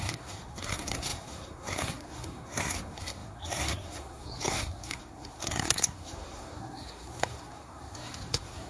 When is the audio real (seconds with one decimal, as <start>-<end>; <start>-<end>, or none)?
none